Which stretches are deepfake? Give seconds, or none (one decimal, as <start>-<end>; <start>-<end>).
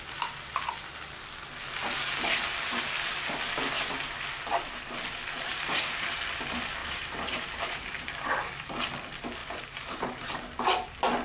5.5-6.2; 6.8-8.1; 9.4-10.3